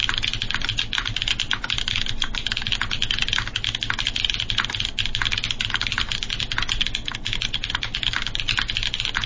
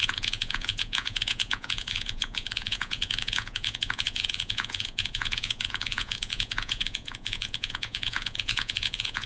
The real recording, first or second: first